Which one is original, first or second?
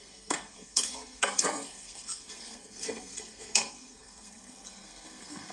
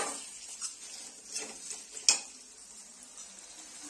second